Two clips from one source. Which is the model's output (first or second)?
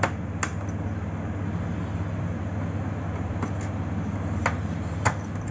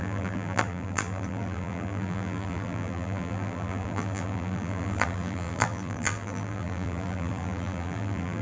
second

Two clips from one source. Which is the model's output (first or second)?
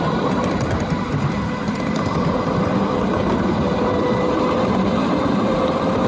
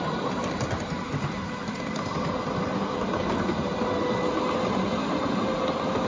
first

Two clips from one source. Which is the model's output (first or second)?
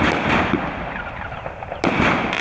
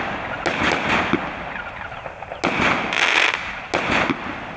first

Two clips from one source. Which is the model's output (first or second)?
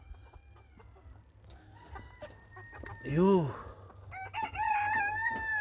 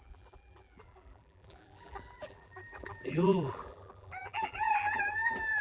second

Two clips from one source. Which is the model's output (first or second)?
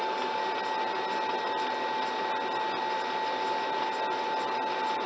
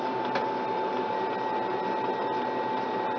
second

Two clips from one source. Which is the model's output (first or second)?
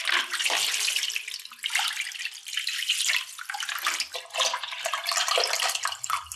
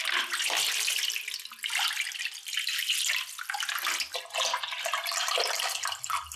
first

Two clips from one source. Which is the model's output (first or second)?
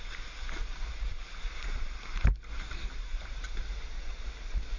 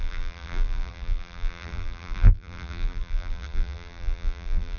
second